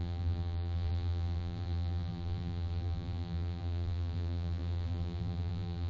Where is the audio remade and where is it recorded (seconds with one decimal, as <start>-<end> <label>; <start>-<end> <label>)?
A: 0.0-5.9 remade